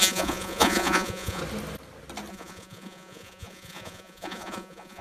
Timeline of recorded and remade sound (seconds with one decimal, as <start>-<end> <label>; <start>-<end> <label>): 0.0-1.4 remade; 1.4-2.3 recorded; 2.3-5.0 remade